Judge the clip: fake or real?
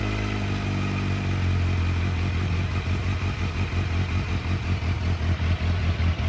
real